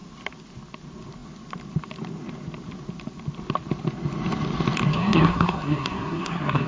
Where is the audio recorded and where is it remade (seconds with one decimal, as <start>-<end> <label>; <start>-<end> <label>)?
0.0-4.9 recorded; 4.9-6.7 remade